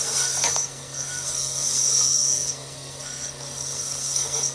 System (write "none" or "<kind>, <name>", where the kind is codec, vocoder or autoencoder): codec, SNAC